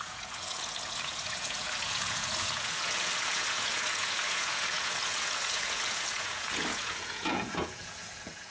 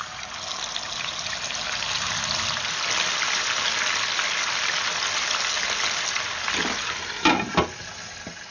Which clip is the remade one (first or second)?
first